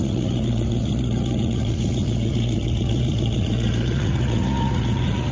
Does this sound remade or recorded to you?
remade